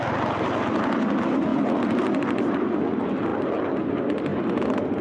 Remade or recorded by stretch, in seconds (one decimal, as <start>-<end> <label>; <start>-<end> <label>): 0.0-5.0 recorded